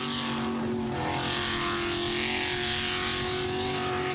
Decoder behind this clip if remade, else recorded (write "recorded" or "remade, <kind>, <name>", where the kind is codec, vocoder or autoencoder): recorded